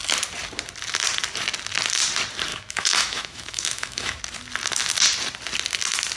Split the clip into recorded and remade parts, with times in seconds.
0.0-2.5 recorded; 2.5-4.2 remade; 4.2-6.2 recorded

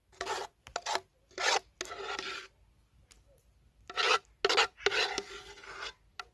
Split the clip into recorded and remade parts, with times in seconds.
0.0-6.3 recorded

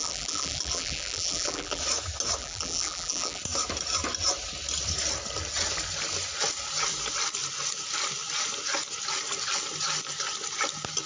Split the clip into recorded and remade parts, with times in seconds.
0.0-1.8 remade; 1.8-2.4 recorded; 2.4-3.4 remade; 3.4-11.1 recorded

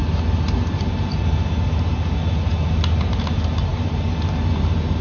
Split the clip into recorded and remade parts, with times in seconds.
0.0-5.0 recorded

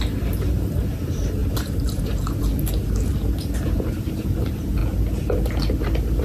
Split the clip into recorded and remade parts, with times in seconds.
0.0-2.4 remade; 2.4-3.9 recorded; 3.9-4.8 remade; 4.8-6.2 recorded

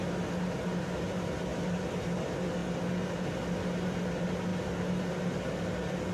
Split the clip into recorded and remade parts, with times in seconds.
0.0-6.1 recorded